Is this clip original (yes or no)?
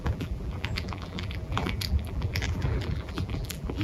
no